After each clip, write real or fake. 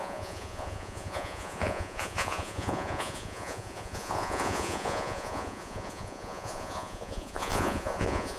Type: fake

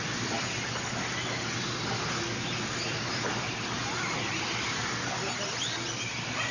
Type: real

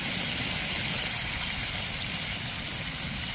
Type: real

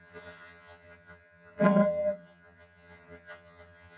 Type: fake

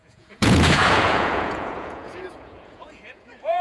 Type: fake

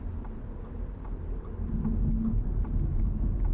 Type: real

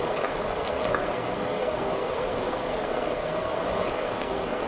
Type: fake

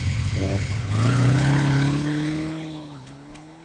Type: fake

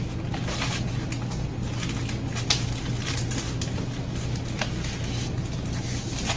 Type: real